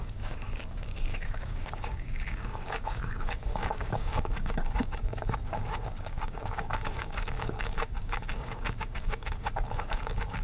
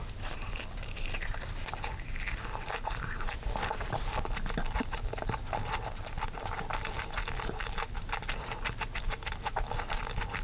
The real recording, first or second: second